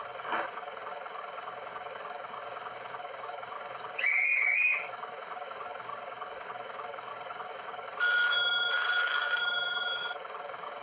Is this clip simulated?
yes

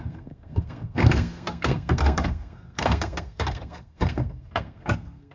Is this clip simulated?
yes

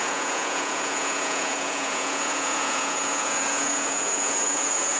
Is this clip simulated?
yes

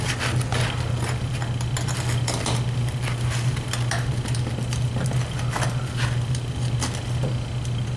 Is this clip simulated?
no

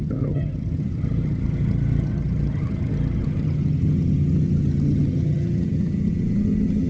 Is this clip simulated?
yes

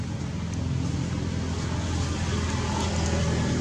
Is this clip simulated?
no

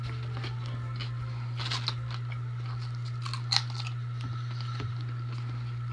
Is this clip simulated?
no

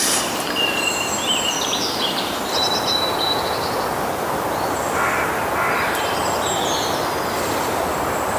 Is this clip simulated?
no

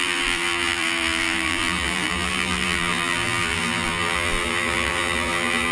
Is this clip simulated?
yes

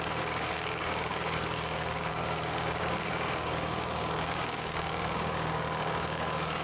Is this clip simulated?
yes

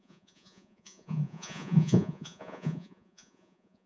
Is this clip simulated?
yes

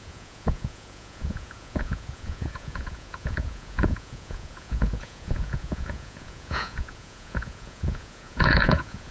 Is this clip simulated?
yes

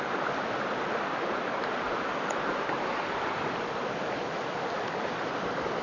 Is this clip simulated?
no